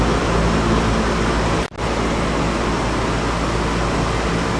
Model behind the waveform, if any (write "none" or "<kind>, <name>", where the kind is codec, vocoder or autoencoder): none